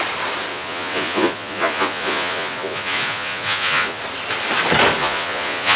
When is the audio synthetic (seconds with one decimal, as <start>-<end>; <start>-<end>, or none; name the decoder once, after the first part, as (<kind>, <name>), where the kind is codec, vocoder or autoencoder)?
0.5-4.0 (vocoder, Vocos); 5.0-5.8